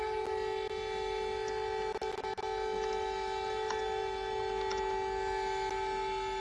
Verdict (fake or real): real